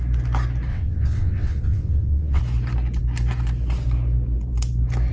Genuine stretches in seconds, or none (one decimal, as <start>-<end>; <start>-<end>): 0.0-0.7; 2.4-5.1